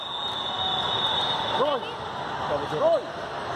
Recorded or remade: recorded